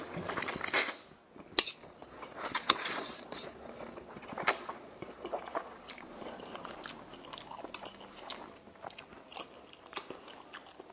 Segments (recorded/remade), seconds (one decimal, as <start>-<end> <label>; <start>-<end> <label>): 0.0-2.0 recorded; 2.0-6.8 remade; 6.8-10.9 recorded